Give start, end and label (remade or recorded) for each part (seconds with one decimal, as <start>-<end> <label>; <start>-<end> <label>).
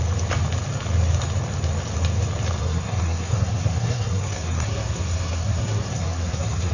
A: 0.0-2.6 recorded; 2.6-6.7 remade